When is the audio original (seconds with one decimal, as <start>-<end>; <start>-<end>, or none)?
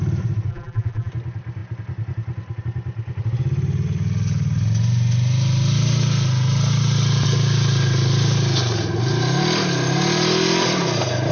0.0-0.5; 1.1-11.3